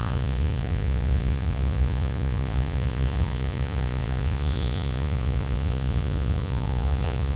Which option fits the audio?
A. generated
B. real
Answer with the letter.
A